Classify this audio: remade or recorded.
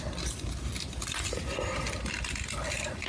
recorded